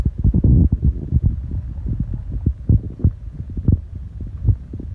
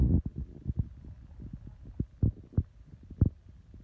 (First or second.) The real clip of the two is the second